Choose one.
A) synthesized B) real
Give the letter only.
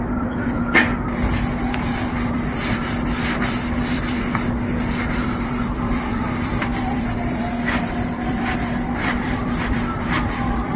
A